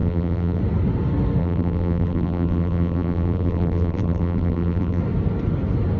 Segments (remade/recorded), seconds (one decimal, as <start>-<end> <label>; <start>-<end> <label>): 0.0-0.6 remade; 0.6-1.4 recorded; 1.4-5.0 remade; 5.0-6.0 recorded